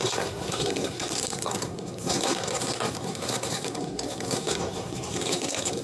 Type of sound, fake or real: fake